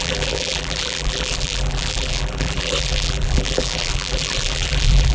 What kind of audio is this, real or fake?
fake